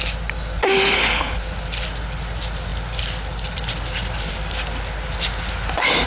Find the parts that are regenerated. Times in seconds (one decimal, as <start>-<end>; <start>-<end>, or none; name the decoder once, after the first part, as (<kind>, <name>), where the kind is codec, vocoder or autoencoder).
none